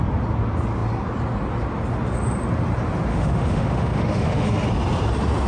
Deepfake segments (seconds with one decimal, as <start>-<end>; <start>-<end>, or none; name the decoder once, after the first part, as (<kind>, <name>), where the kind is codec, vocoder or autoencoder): 3.1-4.5 (autoencoder, DAC-VAE)